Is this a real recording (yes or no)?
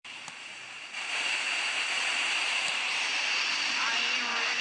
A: no